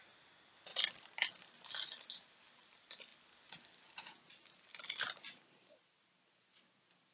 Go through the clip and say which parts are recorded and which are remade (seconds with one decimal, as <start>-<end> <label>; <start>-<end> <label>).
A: 0.0-7.1 recorded